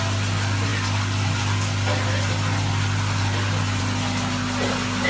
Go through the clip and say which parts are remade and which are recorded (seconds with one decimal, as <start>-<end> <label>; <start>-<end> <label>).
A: 0.0-5.1 recorded